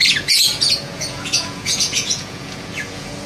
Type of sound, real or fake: fake